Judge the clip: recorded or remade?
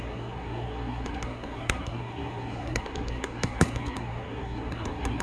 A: remade